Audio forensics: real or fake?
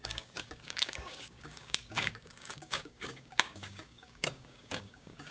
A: fake